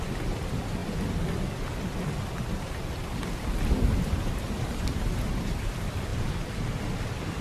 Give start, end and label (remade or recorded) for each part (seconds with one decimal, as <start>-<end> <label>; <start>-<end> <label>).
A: 0.0-7.4 remade